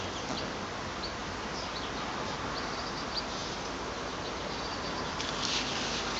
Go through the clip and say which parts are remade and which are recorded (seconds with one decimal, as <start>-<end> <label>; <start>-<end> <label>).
0.0-6.2 recorded

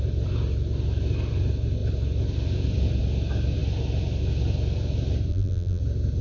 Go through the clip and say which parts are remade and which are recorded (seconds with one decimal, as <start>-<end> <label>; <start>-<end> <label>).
0.0-5.3 recorded; 5.3-5.8 remade; 5.8-6.2 recorded

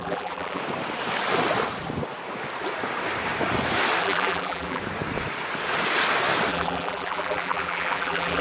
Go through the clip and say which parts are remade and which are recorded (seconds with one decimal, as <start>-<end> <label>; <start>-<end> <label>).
0.0-0.6 remade; 0.6-4.0 recorded; 4.0-4.8 remade; 4.8-6.5 recorded; 6.5-8.4 remade

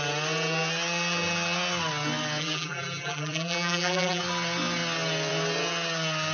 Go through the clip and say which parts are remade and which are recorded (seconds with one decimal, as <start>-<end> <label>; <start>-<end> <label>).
0.0-2.4 recorded; 2.4-4.2 remade; 4.2-6.3 recorded

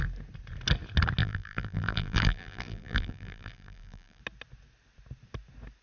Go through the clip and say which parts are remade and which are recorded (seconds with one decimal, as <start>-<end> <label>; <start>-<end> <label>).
0.0-1.2 recorded; 1.2-4.2 remade; 4.2-5.8 recorded

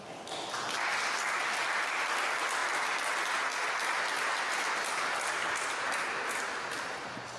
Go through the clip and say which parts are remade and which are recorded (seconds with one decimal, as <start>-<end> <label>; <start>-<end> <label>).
0.0-7.4 recorded